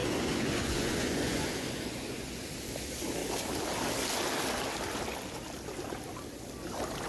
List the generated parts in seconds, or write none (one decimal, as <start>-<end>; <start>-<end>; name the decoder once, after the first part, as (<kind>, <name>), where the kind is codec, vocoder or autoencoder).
0.0-2.5 (vocoder, Vocos)